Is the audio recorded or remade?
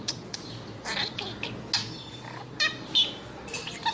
recorded